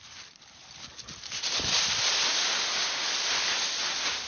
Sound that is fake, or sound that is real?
real